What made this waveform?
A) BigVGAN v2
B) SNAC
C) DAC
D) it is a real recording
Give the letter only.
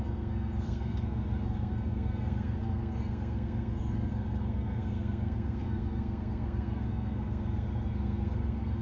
B